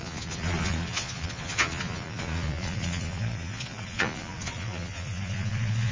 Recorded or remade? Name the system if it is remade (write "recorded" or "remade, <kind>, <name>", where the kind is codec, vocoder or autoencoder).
remade, vocoder, Vocos